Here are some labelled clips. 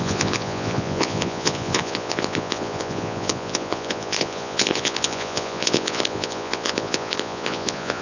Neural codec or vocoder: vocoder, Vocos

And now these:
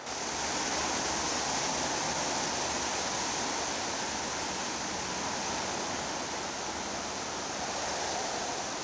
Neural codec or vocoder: none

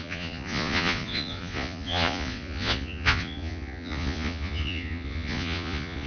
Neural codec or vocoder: vocoder, Vocos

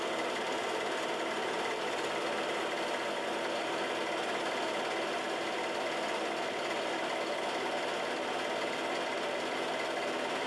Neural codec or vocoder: none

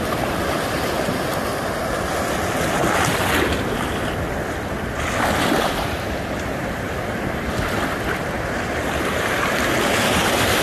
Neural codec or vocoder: none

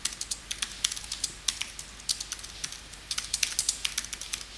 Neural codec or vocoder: none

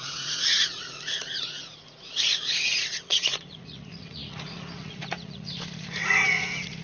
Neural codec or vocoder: vocoder, Vocos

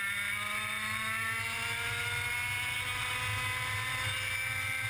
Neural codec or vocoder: none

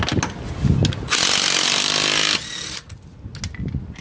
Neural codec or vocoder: none